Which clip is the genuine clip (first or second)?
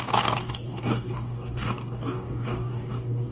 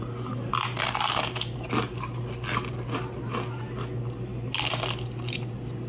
second